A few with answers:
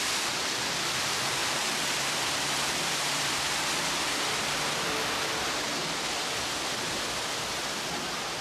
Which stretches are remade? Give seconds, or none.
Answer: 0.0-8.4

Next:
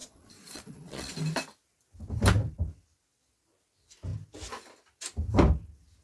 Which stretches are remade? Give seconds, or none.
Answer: 0.0-1.1